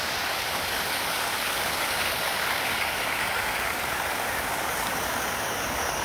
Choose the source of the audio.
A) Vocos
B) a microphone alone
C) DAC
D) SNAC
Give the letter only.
C